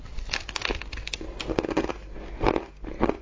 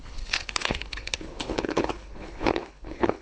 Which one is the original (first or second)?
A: first